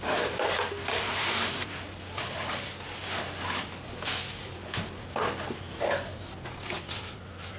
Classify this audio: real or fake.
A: real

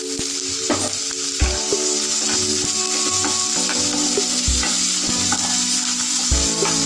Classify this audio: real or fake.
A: real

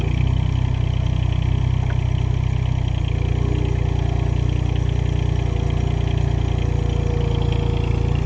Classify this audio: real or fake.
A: real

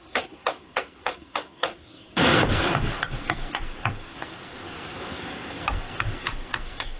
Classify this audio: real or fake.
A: fake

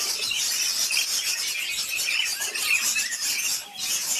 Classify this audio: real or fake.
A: real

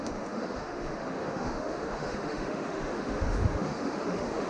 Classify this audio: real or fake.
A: fake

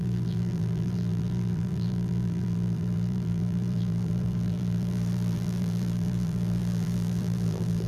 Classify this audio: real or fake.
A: fake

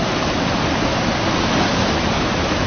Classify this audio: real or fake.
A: real